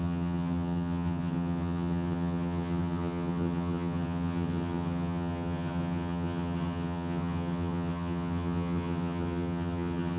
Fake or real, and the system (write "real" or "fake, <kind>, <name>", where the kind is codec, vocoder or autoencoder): fake, vocoder, HiFi-GAN